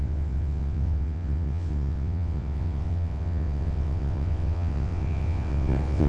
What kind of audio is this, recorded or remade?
remade